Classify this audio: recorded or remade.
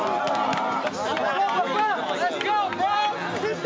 recorded